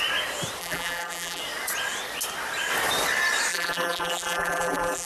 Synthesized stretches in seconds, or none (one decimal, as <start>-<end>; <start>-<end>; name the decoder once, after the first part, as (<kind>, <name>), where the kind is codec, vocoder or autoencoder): 0.6-1.4 (vocoder, BigVGAN v2); 3.5-5.1